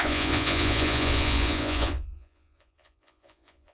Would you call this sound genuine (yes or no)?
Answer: no